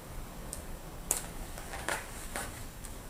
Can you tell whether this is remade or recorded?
remade